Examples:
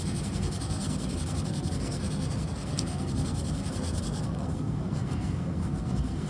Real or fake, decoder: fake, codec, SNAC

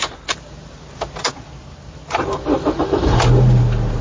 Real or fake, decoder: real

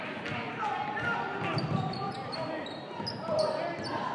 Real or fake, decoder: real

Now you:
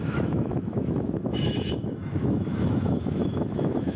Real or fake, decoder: fake, autoencoder, DAC-VAE